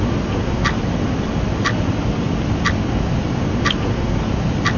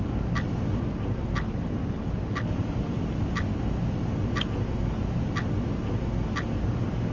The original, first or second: second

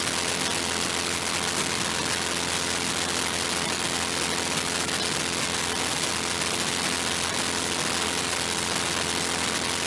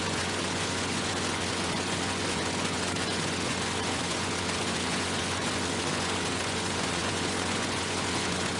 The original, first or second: first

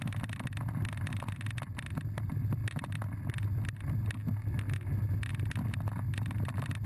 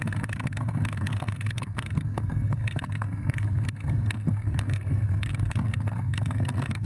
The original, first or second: first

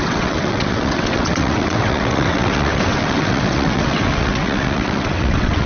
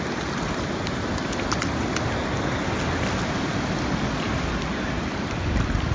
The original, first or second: second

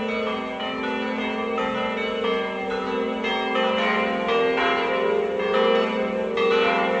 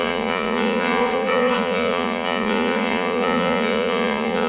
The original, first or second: first